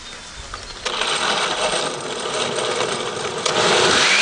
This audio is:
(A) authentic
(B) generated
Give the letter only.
A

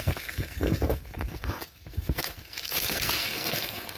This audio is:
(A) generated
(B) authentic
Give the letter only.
A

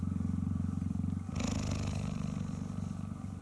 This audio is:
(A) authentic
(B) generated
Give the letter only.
A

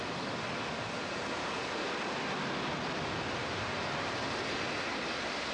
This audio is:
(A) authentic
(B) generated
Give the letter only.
A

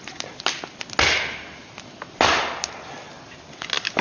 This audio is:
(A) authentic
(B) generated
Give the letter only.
A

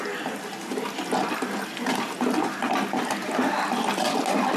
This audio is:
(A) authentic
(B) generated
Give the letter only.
A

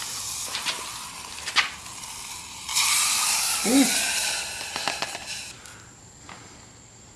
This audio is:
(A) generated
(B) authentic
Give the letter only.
B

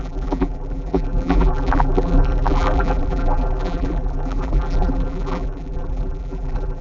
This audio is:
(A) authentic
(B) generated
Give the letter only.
B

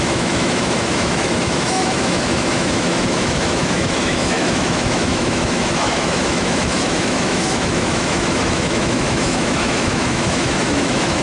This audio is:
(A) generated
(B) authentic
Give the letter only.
A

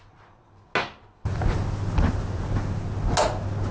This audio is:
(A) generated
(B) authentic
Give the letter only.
B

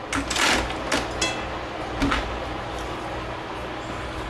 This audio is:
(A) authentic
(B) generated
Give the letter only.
A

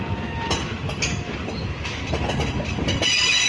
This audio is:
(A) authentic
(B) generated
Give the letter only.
A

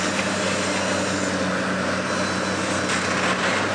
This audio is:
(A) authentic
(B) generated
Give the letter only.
A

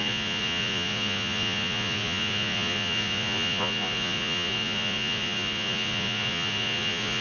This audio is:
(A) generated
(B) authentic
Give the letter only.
A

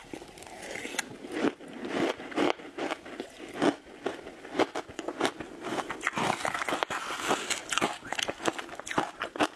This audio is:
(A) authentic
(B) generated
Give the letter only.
A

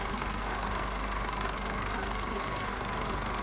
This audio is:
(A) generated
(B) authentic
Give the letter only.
A